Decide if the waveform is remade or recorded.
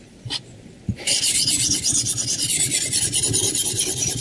recorded